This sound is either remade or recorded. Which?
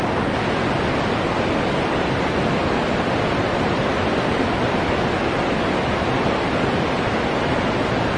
recorded